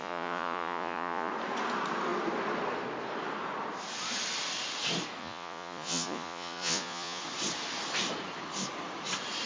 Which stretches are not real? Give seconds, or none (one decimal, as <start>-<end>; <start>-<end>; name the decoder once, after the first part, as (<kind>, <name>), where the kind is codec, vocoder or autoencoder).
0.0-1.3 (vocoder, Vocos); 5.2-7.2